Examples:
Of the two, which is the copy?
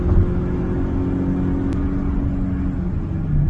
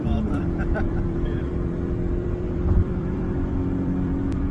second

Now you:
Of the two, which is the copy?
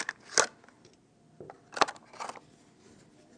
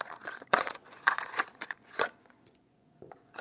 second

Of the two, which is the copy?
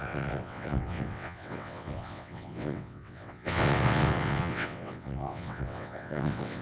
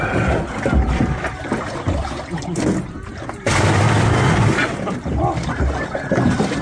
first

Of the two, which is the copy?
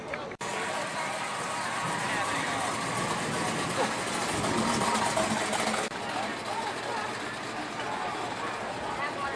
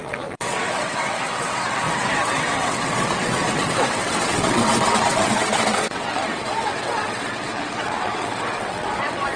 second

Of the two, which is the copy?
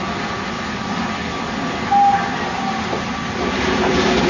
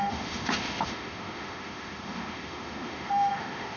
second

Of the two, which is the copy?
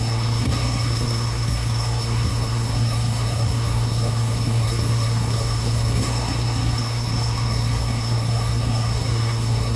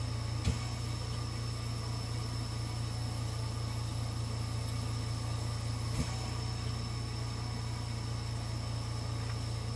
first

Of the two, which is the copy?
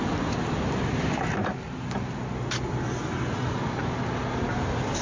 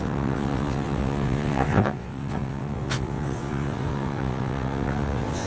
second